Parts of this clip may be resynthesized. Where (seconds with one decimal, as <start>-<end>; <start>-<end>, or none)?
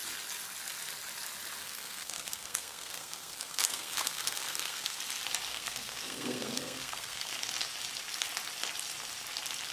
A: 1.6-5.0; 5.5-7.3